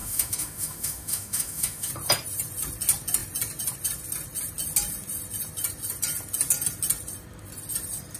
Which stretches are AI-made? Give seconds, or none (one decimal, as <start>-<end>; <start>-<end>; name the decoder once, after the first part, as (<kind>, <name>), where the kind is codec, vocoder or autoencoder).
0.0-1.9 (autoencoder, DAC-VAE)